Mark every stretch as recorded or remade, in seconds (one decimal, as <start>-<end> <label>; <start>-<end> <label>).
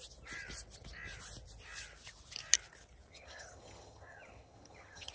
0.0-3.1 recorded; 3.1-5.1 remade